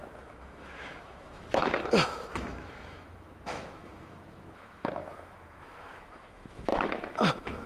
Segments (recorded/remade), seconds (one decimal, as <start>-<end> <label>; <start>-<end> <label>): 0.0-7.7 remade